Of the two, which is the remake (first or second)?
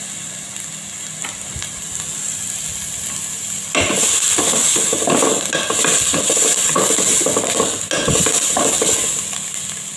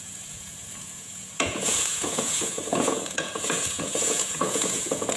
second